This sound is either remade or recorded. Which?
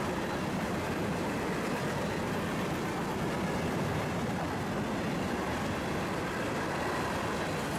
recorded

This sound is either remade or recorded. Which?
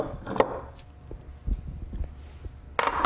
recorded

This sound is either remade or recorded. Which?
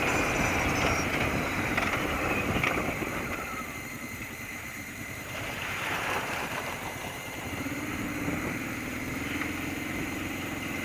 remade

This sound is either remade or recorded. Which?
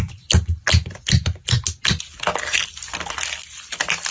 recorded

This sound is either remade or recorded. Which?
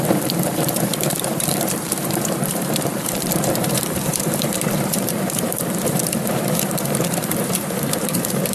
remade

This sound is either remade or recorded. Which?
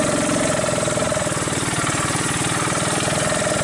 remade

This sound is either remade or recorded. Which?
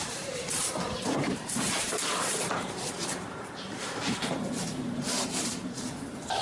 remade